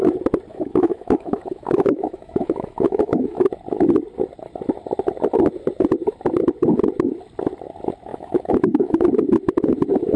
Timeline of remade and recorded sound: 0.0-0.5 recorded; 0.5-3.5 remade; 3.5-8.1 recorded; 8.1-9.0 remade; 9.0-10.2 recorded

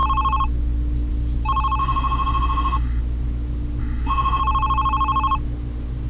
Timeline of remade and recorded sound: 0.0-1.8 recorded; 1.8-3.0 remade; 3.0-3.8 recorded; 3.8-4.4 remade; 4.4-6.1 recorded

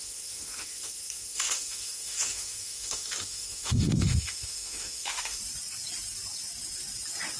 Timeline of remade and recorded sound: 0.0-5.4 remade; 5.4-7.4 recorded